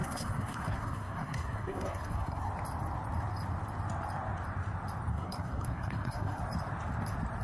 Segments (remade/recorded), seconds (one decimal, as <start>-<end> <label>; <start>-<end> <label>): 0.0-2.5 remade; 2.5-5.1 recorded; 5.1-6.4 remade; 6.4-7.4 recorded